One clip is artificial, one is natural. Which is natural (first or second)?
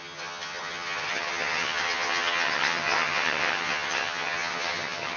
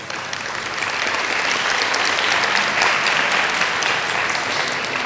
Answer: second